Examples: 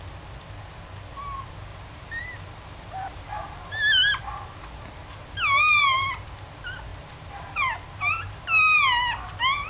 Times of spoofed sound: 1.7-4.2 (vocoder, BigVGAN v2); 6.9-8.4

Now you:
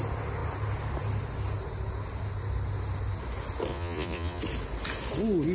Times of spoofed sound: 3.7-4.4 (vocoder, Vocos)

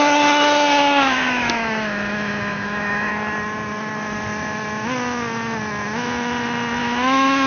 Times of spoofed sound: 0.7-3.1 (autoencoder, DAC-VAE); 6.8-7.5

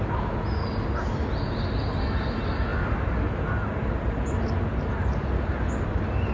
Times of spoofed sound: none

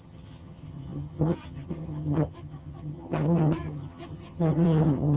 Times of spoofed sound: 0.0-5.2 (vocoder, HiFi-GAN)

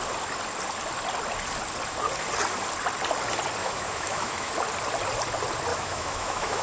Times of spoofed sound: 3.6-4.5 (autoencoder, DAC-VAE); 5.7-6.6